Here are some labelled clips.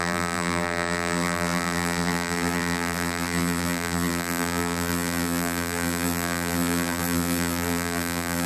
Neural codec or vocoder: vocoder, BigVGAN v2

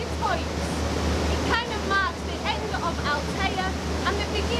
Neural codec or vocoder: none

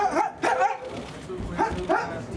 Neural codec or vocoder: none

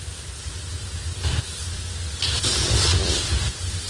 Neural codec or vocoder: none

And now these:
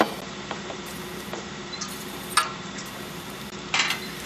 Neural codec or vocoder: vocoder, BigVGAN v2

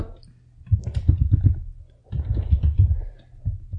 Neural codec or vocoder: none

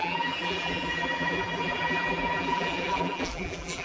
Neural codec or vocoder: vocoder, BigVGAN v2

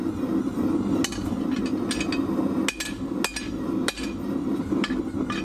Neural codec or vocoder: none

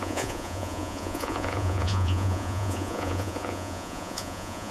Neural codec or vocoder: vocoder, Vocos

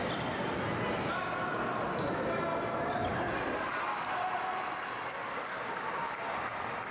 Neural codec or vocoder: none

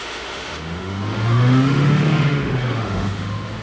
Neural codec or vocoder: autoencoder, DAC-VAE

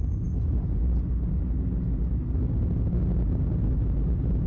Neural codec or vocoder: none